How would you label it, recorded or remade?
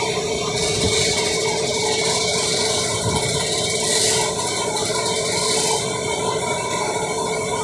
recorded